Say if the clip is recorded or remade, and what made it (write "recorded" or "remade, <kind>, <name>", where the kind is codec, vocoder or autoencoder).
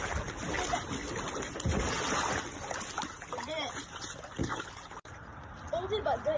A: recorded